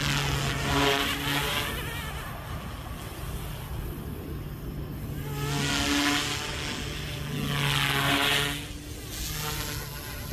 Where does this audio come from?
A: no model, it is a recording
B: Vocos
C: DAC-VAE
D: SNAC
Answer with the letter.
A